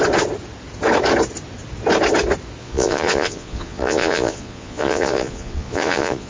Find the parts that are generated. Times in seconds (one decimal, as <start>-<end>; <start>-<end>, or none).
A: 2.6-6.3